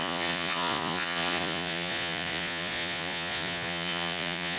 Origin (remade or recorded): remade